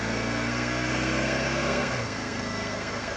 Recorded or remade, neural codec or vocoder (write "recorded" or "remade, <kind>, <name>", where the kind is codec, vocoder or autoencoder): remade, codec, SNAC